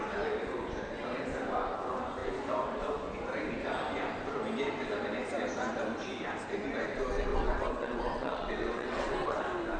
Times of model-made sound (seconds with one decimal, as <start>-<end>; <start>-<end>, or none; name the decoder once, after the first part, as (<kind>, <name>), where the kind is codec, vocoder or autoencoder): 7.3-9.4 (vocoder, WaveNeXt)